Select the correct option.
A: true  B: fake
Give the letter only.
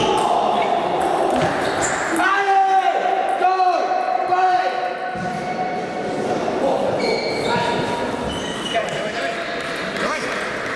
A